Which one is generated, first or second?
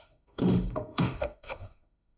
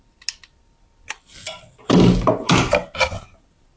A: first